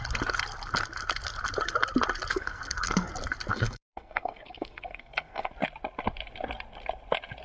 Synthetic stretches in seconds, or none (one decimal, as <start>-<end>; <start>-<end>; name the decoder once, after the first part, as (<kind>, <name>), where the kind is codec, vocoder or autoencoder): 2.3-3.1 (codec, SNAC); 3.5-5.5